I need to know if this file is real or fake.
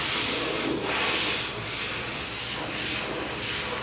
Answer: real